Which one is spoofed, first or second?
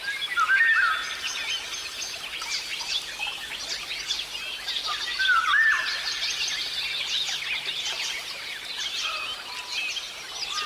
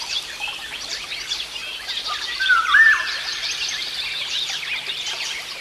second